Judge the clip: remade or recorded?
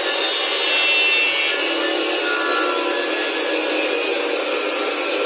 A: recorded